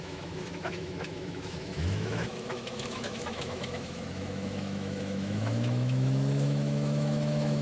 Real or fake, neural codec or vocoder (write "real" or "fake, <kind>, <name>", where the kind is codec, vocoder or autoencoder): fake, autoencoder, DAC-VAE